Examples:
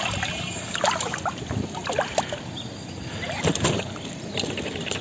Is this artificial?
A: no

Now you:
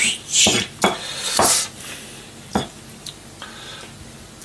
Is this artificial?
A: no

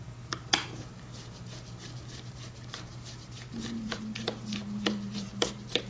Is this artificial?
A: yes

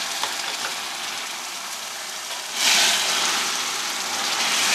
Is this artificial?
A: no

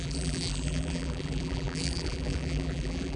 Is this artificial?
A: yes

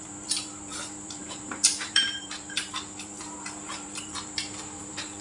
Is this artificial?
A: yes